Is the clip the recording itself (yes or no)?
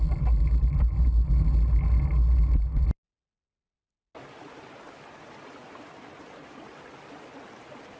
yes